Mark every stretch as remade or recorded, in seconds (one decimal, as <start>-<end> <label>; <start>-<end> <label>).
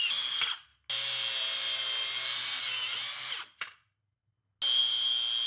0.0-5.5 recorded